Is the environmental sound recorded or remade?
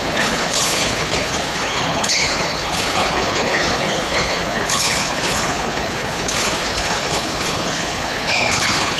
remade